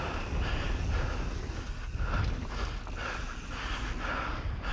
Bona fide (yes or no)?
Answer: yes